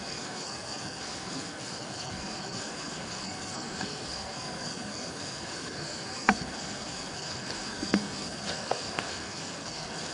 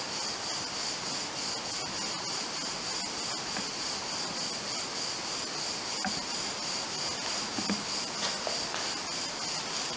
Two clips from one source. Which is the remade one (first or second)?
first